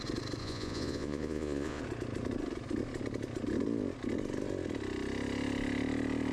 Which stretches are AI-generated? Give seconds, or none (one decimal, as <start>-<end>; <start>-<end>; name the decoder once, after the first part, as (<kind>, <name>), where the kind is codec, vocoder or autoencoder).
0.4-1.8 (vocoder, Vocos)